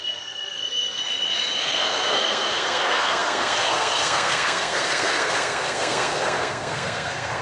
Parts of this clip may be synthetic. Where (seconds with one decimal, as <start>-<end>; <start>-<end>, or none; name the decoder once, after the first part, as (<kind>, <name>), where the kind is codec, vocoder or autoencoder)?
0.0-1.0 (codec, SNAC); 1.6-7.4